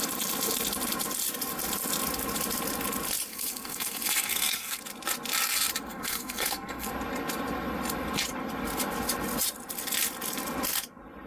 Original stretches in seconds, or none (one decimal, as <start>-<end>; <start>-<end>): 0.0-3.3; 4.8-5.9; 6.9-11.3